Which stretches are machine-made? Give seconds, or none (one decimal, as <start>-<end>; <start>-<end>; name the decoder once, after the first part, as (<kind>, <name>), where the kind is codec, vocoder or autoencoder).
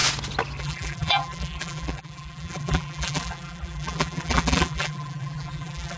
0.6-6.0 (vocoder, BigVGAN v2)